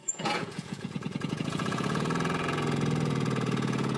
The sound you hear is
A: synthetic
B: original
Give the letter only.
A